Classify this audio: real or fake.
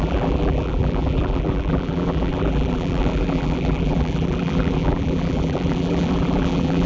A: fake